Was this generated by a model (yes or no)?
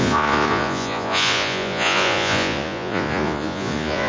yes